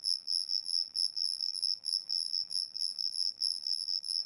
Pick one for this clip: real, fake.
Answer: fake